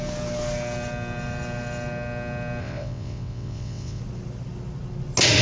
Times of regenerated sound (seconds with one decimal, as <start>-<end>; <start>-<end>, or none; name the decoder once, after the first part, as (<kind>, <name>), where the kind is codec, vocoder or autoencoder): 2.6-4.0 (vocoder, WaveNeXt)